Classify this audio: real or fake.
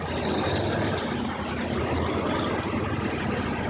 real